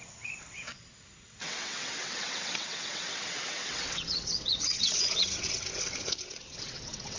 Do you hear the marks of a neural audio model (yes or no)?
yes